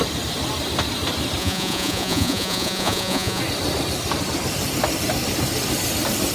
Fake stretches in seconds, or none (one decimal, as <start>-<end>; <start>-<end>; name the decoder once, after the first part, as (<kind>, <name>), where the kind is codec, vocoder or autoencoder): 1.4-3.4 (vocoder, Vocos)